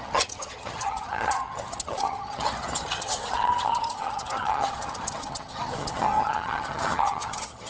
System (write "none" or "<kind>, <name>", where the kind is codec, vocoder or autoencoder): vocoder, HiFi-GAN